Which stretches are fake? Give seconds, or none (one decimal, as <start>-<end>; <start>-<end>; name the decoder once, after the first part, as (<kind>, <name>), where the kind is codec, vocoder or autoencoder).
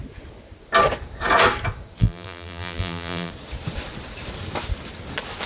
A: 2.0-3.3 (vocoder, BigVGAN v2)